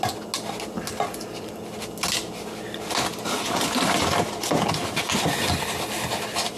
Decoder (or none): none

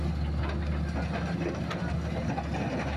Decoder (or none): none